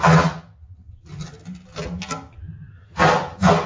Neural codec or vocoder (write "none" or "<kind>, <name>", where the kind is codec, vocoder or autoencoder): none